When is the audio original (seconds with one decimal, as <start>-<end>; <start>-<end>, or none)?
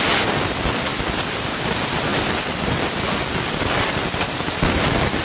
0.0-5.2